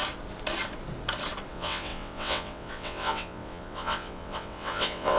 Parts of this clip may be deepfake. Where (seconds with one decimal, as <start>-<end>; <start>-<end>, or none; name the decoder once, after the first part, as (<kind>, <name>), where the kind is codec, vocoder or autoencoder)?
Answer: 1.5-5.2 (vocoder, WaveNeXt)